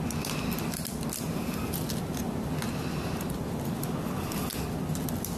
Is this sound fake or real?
real